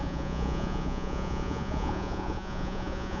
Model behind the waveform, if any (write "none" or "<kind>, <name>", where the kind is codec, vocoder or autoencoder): vocoder, Vocos